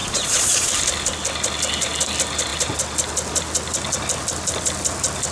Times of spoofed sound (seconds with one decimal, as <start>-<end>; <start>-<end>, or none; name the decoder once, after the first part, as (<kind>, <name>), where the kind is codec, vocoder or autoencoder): 0.0-0.7 (vocoder, Vocos)